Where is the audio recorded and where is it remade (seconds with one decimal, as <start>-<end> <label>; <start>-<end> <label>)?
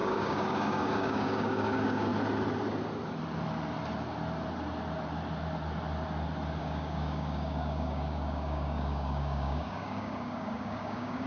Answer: 0.0-2.1 remade; 2.1-6.6 recorded; 6.6-11.3 remade